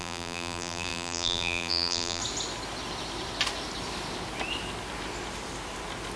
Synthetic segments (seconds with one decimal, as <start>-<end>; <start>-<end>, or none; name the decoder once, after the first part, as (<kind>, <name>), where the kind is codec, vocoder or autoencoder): 0.0-2.2 (vocoder, BigVGAN v2)